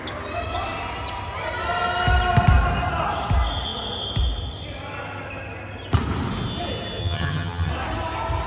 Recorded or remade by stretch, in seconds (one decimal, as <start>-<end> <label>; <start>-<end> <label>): 0.0-7.0 recorded; 7.0-7.7 remade; 7.7-8.5 recorded